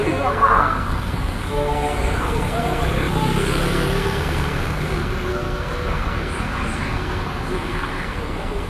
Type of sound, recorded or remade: remade